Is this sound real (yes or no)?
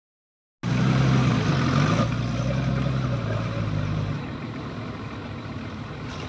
yes